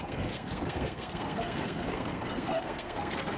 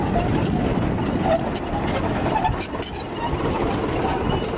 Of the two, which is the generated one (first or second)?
first